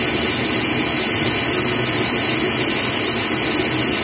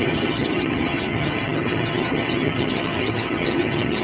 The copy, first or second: second